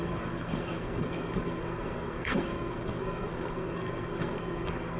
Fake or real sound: fake